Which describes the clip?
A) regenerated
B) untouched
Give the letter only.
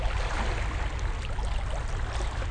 B